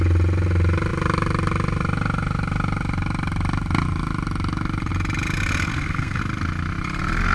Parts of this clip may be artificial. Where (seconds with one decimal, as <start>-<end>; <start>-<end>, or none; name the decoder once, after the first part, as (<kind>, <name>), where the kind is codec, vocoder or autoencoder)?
5.7-6.2 (codec, SNAC)